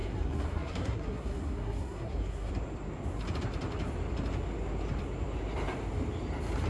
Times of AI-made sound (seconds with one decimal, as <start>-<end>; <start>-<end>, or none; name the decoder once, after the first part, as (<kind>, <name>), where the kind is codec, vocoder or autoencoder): 0.0-2.5 (codec, SNAC)